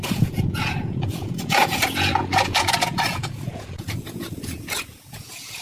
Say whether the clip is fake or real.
fake